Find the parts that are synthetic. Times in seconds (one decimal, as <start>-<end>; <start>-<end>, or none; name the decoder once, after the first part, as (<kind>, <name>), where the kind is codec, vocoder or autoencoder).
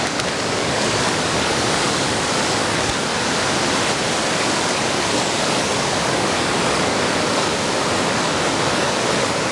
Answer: 0.0-3.1 (codec, DAC); 4.1-7.5; 8.0-9.5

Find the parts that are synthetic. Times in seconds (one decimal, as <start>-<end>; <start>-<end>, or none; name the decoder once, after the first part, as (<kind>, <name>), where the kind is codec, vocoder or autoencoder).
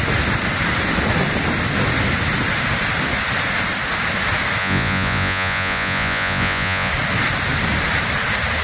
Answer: 4.6-6.9 (vocoder, Vocos)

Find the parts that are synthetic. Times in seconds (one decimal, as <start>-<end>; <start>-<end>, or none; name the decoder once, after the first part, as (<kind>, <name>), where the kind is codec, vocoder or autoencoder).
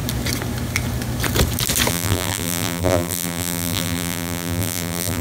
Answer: 1.9-5.2 (vocoder, BigVGAN v2)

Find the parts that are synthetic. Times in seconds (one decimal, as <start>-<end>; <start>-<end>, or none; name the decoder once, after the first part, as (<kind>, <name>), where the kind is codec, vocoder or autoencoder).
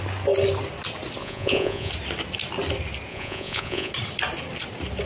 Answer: 1.2-1.9 (vocoder, Vocos); 3.1-3.9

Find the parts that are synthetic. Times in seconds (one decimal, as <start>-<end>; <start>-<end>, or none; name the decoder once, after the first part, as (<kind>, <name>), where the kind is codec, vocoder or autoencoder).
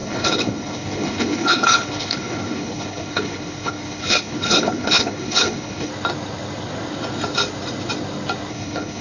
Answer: 0.0-5.9 (codec, HILCodec); 8.5-9.0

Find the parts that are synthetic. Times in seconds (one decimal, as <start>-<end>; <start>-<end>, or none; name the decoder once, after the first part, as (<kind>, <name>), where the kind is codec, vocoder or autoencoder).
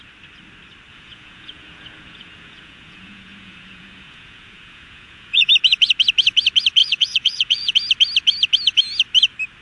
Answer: 0.9-5.5 (vocoder, Vocos); 6.8-7.7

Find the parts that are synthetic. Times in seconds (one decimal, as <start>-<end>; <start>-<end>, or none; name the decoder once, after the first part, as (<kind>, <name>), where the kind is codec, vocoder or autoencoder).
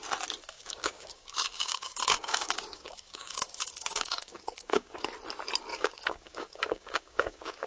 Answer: 0.5-5.1 (codec, DAC); 5.7-7.7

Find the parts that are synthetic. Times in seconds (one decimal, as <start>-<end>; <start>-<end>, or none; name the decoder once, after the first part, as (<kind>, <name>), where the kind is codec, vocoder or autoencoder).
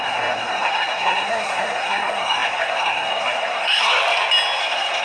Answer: 0.0-3.9 (codec, SNAC); 4.6-5.0